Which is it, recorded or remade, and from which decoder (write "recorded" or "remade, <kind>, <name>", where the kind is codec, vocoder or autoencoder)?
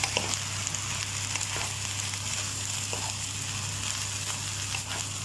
recorded